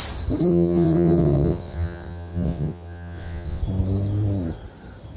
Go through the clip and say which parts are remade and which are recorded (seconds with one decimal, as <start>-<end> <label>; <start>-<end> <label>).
0.0-0.5 recorded; 0.5-3.6 remade; 3.6-5.2 recorded